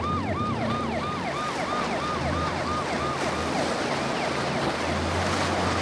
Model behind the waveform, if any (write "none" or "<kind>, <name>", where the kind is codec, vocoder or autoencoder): none